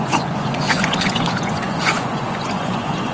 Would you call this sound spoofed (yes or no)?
yes